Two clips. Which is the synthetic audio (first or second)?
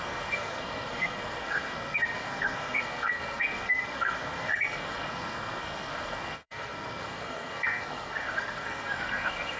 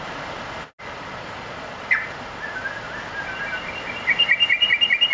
first